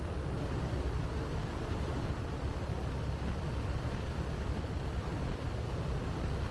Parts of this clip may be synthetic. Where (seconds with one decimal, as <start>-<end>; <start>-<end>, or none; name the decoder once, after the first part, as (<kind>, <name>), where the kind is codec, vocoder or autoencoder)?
1.0-2.4 (vocoder, BigVGAN v2); 5.0-6.0